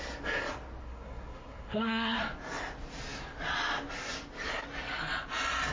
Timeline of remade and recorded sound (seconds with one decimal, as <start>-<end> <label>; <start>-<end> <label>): 0.0-0.8 recorded; 0.8-2.2 remade; 2.2-5.7 recorded